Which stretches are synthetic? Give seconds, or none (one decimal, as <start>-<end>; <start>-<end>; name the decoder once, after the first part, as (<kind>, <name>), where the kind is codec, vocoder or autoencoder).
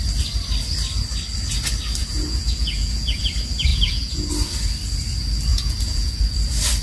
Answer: 2.0-3.2 (vocoder, Vocos); 3.7-4.3; 5.5-6.2